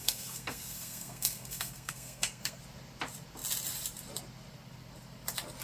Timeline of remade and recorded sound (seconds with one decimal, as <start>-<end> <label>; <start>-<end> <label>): 0.0-2.6 remade; 2.6-5.6 recorded